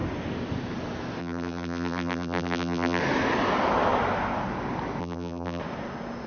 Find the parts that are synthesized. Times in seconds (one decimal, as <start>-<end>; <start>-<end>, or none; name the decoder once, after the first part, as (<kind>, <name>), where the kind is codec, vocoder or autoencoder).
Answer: 1.2-3.0 (vocoder, BigVGAN v2); 5.0-5.6